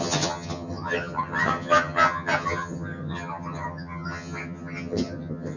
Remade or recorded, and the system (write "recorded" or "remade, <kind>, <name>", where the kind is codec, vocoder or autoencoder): remade, vocoder, HiFi-GAN